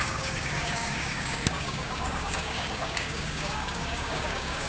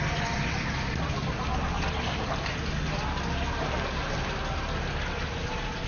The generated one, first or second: first